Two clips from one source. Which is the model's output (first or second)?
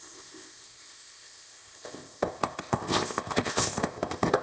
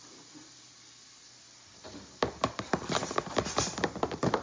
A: first